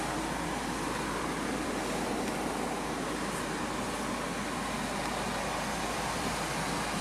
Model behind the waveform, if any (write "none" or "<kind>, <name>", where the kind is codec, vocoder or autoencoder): none